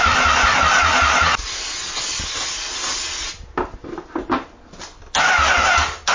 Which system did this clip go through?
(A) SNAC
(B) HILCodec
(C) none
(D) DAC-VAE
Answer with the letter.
C